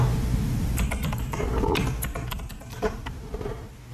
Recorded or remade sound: recorded